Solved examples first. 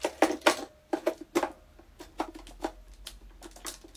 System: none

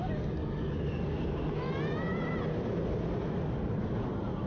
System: none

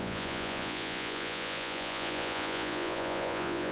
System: vocoder, Vocos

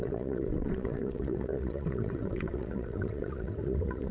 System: vocoder, WaveNeXt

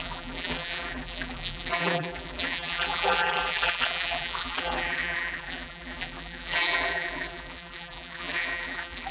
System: vocoder, BigVGAN v2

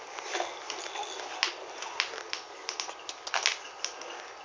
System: none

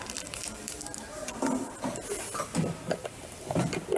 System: vocoder, BigVGAN v2